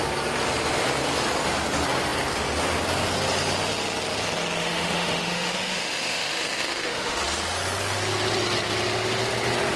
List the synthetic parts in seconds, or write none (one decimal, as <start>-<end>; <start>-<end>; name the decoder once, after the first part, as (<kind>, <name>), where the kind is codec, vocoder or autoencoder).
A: 4.6-7.2 (autoencoder, DAC-VAE)